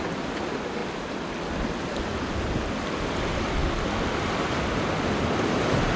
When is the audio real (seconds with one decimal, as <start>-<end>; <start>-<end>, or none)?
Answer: 0.0-6.0